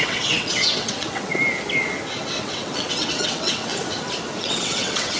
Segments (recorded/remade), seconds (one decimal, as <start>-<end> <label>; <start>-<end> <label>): 0.0-1.3 remade; 1.3-2.3 recorded; 2.3-3.7 remade; 3.7-4.4 recorded; 4.4-5.2 remade